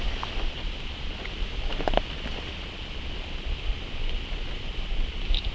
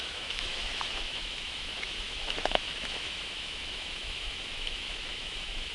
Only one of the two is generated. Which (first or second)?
second